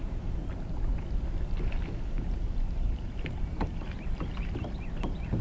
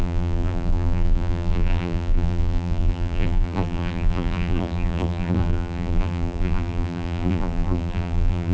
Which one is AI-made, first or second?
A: second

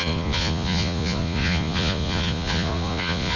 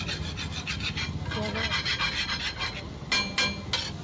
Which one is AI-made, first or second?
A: first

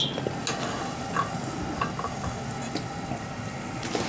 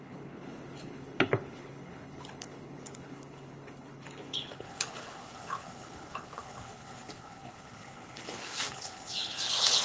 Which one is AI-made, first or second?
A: second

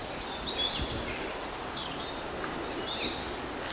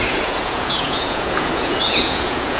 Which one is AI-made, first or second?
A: second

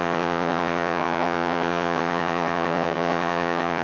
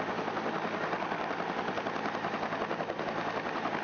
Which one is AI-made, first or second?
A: first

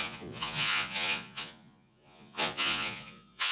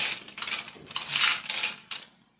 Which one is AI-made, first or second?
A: first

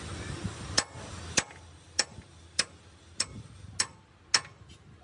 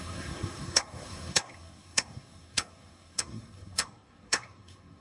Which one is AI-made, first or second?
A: second